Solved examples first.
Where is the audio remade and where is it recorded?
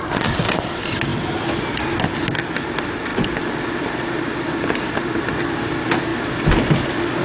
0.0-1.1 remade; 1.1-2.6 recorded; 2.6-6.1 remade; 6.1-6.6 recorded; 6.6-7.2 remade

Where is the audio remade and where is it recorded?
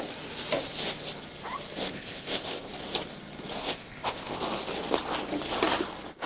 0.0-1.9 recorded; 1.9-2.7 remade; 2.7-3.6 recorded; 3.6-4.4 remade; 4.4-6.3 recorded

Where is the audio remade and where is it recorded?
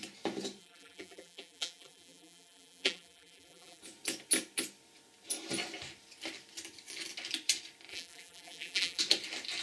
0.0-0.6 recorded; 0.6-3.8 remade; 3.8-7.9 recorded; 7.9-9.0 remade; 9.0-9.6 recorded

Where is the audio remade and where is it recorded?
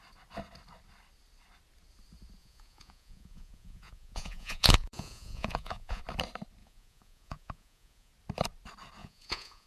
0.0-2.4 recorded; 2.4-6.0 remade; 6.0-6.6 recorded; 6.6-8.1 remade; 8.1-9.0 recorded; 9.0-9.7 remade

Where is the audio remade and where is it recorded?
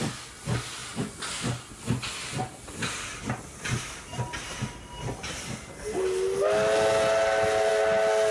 0.0-8.3 recorded